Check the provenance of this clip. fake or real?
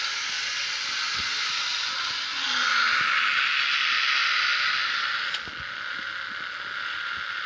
real